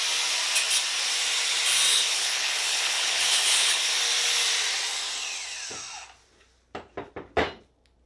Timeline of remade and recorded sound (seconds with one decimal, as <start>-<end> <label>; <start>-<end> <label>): 0.0-1.9 recorded; 1.9-3.9 remade; 3.9-8.1 recorded

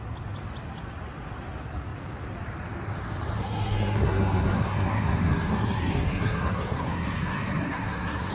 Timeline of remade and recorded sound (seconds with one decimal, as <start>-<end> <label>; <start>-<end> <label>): 0.0-3.4 recorded; 3.4-8.3 remade

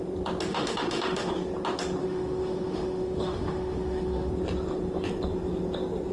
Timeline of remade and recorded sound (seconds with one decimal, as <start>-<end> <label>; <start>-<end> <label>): 0.0-0.5 recorded; 0.5-1.3 remade; 1.3-2.0 recorded; 2.0-4.3 remade; 4.3-6.1 recorded

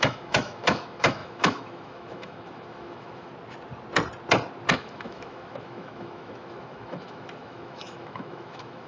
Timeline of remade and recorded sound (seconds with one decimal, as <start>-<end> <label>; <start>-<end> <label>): 0.0-3.3 remade; 3.3-4.7 recorded; 4.7-8.9 remade

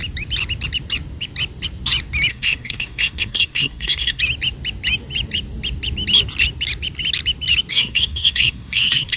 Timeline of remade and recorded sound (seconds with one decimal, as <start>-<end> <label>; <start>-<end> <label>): 0.0-2.3 recorded; 2.3-4.2 remade; 4.2-7.7 recorded; 7.7-9.2 remade

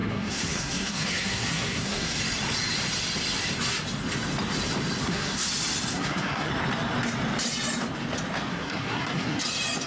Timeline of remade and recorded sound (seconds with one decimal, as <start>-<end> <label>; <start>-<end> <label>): 0.0-2.2 remade; 2.2-5.0 recorded; 5.0-5.5 remade; 5.5-5.9 recorded; 5.9-6.5 remade; 6.5-8.5 recorded; 8.5-9.4 remade; 9.4-9.9 recorded

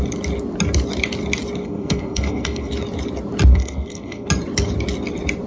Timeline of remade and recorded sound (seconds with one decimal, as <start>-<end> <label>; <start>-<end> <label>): 0.0-1.6 recorded; 1.6-2.7 remade; 2.7-3.5 recorded; 3.5-4.3 remade; 4.3-5.5 recorded

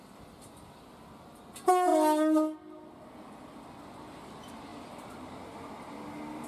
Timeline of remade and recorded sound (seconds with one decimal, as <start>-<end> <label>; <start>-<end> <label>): 0.0-6.5 recorded